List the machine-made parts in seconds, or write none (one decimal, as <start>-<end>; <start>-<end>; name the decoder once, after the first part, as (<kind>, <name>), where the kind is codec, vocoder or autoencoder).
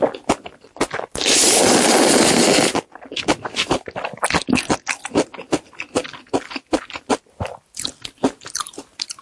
none